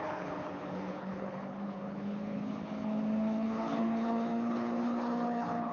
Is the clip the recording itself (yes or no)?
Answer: no